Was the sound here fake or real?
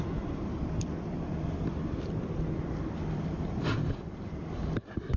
fake